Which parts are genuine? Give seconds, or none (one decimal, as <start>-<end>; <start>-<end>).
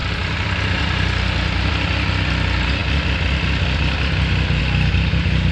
1.7-5.5